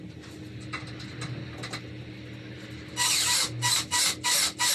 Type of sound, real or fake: real